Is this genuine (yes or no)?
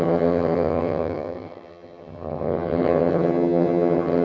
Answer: no